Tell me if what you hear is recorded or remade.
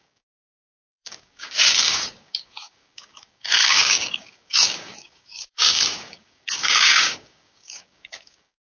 remade